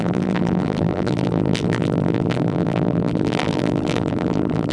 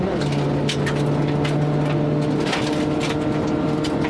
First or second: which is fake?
first